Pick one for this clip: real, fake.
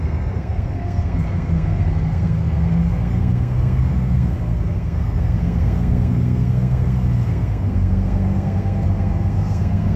fake